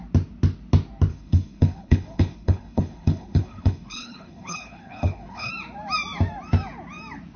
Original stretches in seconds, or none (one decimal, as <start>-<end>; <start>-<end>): 0.0-1.1; 5.5-7.4